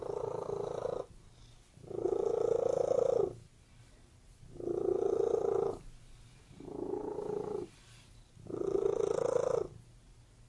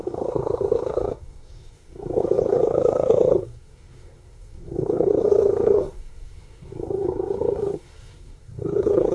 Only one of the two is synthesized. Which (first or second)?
second